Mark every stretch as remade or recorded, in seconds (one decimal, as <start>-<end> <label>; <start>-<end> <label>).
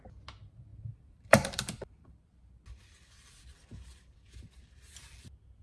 0.0-0.7 recorded; 0.7-2.2 remade; 2.2-5.6 recorded